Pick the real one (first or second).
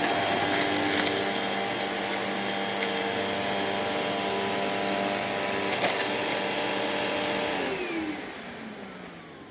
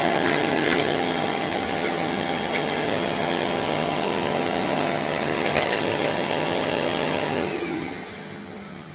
first